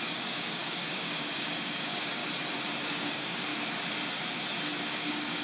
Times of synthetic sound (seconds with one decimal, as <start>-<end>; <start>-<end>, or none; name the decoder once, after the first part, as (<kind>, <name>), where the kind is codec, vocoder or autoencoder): 0.0-2.2 (codec, DAC); 2.8-3.5; 4.9-5.4